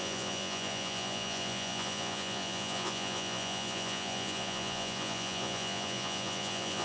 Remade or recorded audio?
remade